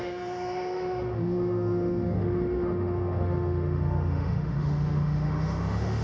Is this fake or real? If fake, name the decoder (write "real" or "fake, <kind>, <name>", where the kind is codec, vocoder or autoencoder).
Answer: fake, autoencoder, DAC-VAE